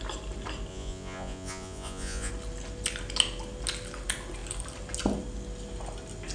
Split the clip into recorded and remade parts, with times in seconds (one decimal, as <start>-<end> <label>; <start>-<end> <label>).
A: 0.0-0.7 recorded; 0.7-2.3 remade; 2.3-6.3 recorded